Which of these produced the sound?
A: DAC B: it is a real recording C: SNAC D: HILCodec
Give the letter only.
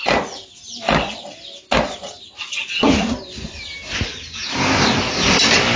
B